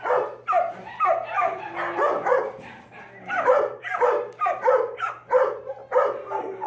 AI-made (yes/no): no